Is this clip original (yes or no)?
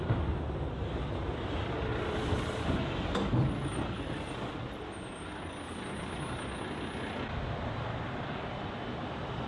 yes